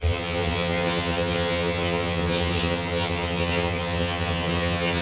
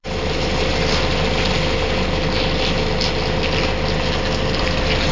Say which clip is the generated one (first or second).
first